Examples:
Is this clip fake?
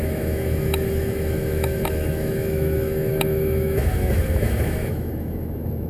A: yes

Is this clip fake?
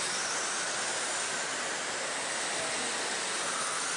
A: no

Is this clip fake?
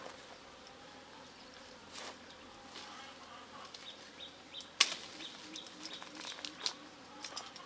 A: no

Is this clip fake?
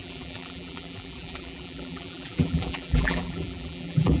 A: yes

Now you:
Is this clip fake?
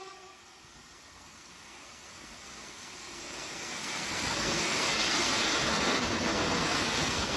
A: yes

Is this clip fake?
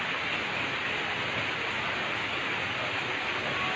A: no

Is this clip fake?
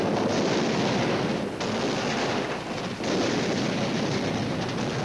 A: no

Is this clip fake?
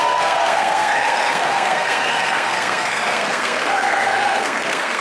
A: yes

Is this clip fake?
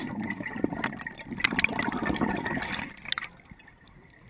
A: no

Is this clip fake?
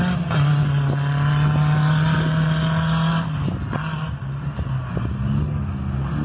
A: no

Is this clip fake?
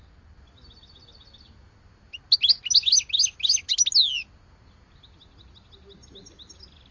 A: no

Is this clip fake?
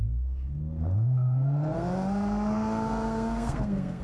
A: yes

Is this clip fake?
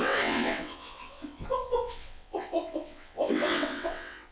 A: yes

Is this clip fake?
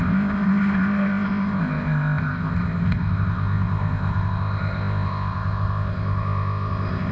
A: yes